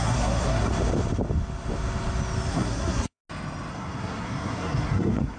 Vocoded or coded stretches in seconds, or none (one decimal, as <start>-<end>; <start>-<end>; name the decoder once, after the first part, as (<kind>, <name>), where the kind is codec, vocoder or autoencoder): 0.0-0.7 (codec, SNAC); 2.5-3.2; 3.7-5.4